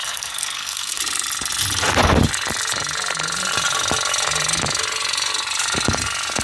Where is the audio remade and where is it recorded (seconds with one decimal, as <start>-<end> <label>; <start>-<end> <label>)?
0.0-1.0 remade; 1.0-6.4 recorded